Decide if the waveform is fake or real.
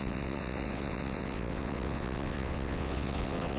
fake